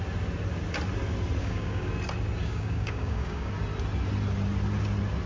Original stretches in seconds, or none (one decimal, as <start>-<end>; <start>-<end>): 0.0-1.4; 1.9-2.4; 3.5-5.3